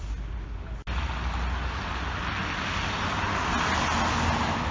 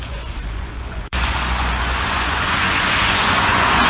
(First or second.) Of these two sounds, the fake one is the second